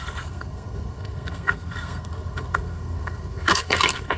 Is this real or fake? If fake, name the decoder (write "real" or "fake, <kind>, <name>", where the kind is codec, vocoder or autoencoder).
fake, codec, SNAC